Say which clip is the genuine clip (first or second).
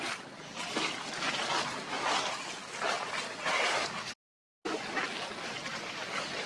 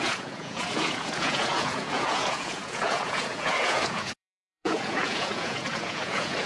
first